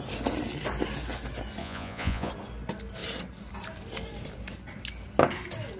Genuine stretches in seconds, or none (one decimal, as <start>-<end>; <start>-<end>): 0.0-1.6; 2.3-5.8